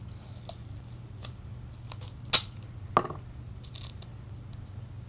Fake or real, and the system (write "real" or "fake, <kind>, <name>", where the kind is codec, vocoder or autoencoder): real